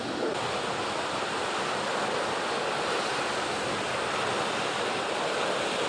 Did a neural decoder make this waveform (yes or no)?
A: no